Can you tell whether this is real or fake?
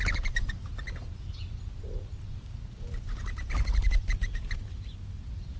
real